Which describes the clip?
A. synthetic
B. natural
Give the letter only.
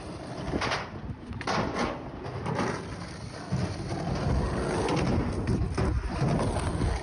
B